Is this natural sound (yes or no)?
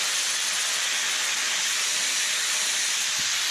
yes